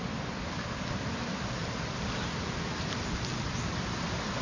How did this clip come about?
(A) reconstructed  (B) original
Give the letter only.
B